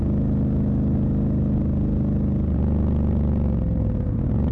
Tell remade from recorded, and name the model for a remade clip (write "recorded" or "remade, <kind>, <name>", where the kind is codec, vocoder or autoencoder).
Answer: recorded